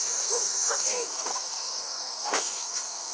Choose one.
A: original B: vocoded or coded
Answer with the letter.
B